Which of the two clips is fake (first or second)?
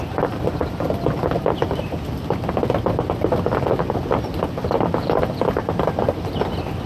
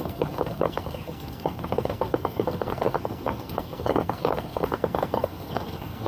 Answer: second